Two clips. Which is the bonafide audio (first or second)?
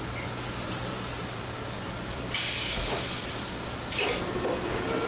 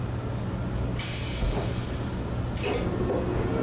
second